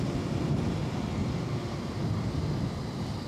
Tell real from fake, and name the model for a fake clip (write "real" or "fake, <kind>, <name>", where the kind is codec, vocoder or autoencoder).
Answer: real